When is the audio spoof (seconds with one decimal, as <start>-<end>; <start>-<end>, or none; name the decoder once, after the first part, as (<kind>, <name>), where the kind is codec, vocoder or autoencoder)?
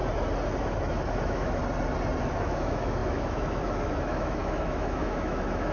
0.6-1.6 (autoencoder, DAC-VAE); 2.2-5.7